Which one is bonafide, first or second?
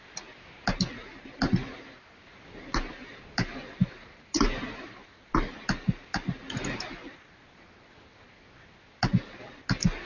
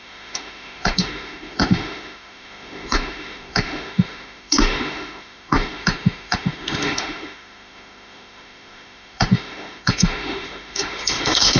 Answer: first